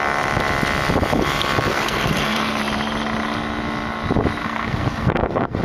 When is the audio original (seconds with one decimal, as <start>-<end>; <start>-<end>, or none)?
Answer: 0.0-1.7; 2.6-4.4